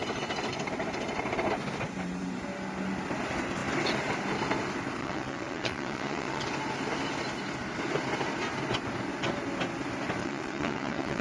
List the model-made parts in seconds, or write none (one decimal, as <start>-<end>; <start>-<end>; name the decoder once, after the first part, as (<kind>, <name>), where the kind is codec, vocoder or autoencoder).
5.0-6.4 (vocoder, WaveNeXt); 10.2-11.2